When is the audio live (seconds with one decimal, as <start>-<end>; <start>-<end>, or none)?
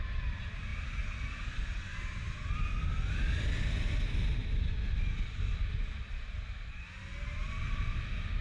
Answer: 0.0-8.4